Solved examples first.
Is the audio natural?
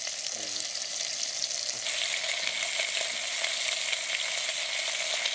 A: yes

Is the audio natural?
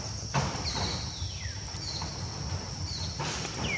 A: no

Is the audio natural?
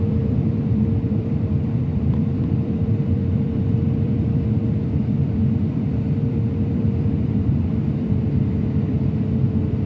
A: no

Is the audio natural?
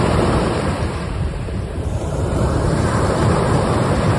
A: no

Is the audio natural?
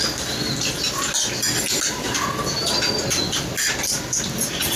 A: yes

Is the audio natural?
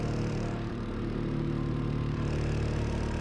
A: no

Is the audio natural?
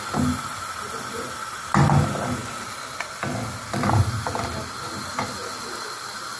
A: yes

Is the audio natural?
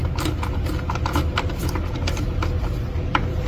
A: yes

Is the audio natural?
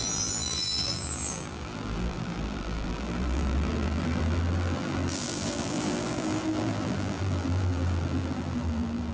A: no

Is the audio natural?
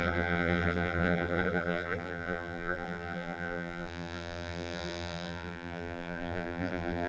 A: no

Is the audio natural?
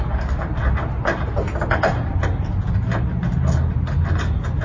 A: yes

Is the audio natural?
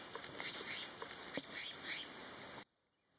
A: no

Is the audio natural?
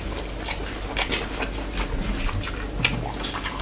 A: yes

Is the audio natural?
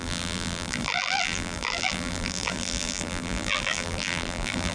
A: no